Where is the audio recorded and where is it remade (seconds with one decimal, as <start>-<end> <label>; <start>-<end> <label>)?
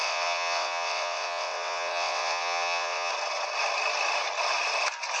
0.0-3.1 remade; 3.1-5.2 recorded